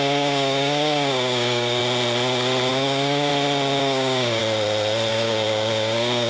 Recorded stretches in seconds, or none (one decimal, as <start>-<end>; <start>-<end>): 1.8-2.7; 3.3-3.8; 4.4-5.1